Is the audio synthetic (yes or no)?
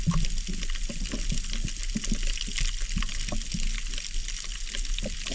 no